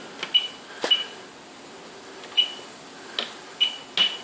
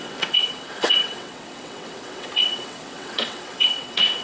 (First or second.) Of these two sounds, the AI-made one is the second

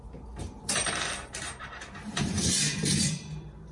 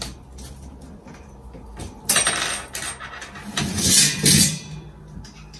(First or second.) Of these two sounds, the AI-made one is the first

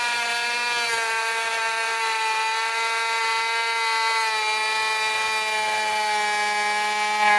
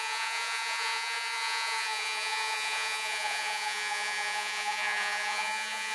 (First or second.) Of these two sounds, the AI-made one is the second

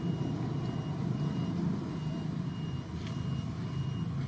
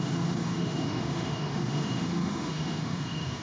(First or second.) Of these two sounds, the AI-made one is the second